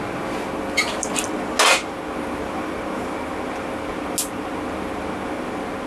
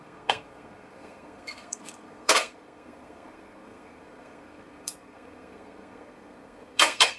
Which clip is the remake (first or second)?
second